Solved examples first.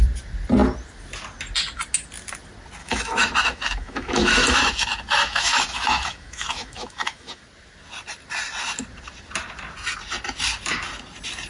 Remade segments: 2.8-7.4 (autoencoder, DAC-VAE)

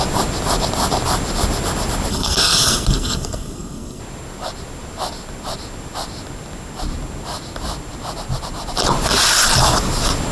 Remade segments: 2.1-4.0 (codec, SNAC)

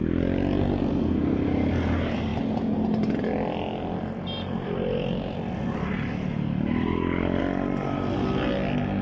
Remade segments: none

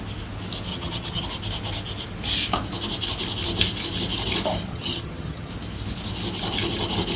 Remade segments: 0.7-1.2 (vocoder, HiFi-GAN); 4.7-5.5

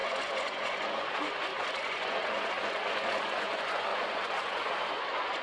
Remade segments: 0.0-5.4 (vocoder, Vocos)

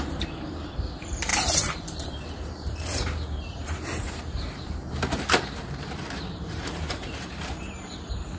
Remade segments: 0.0-8.4 (vocoder, BigVGAN v2)

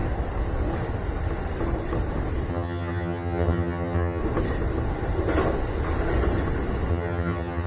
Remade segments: 2.5-4.2 (vocoder, HiFi-GAN); 6.9-7.7